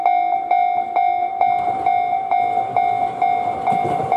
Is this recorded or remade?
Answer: recorded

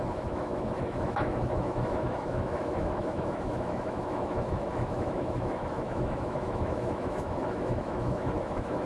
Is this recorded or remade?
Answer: remade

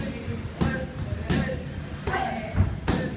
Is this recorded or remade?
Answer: recorded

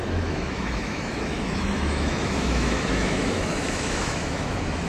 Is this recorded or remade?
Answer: remade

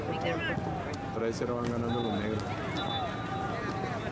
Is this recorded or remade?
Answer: recorded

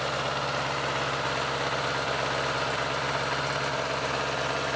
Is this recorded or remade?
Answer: recorded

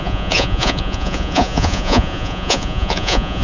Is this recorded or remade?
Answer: remade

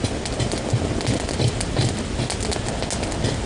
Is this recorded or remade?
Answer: recorded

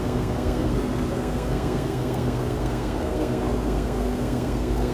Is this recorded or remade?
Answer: remade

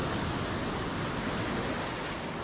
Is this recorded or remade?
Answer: recorded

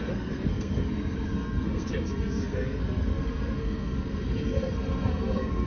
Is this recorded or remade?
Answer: remade